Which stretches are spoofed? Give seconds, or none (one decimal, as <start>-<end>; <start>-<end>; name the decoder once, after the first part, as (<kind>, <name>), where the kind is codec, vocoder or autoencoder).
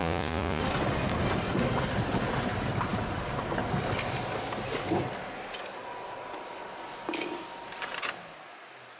0.0-0.6 (vocoder, Vocos)